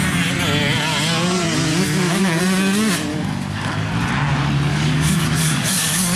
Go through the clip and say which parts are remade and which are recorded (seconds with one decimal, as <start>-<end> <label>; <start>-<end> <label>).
0.0-1.7 recorded; 1.7-2.4 remade; 2.4-3.1 recorded; 3.1-3.9 remade; 3.9-4.7 recorded; 4.7-6.2 remade